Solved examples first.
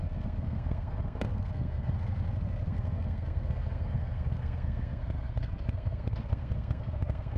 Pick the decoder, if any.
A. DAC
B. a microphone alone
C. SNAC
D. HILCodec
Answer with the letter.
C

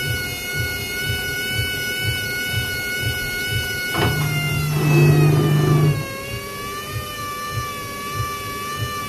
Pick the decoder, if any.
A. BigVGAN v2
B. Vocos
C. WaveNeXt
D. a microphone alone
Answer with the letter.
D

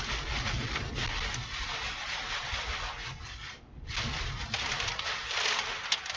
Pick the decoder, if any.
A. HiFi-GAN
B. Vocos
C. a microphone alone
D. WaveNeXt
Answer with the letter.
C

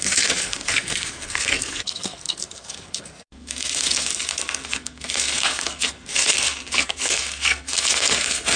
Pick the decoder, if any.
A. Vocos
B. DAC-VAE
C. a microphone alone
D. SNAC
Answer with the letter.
D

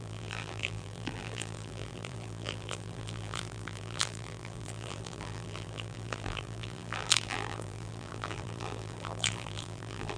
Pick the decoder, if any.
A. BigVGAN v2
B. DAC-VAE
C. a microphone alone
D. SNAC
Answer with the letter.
A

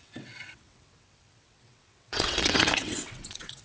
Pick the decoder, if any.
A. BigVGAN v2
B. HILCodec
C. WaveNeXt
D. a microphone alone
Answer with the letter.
C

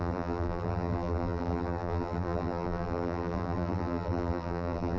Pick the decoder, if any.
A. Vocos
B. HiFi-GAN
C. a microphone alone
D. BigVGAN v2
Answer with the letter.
D